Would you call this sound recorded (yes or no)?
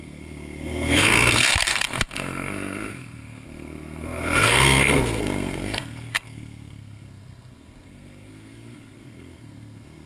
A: no